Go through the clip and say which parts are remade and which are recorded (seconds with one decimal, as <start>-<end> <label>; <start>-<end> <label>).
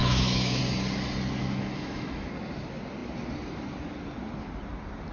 0.0-0.6 remade; 0.6-1.4 recorded; 1.4-2.3 remade; 2.3-5.1 recorded